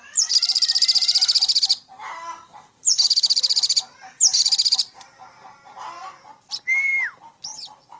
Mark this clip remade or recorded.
remade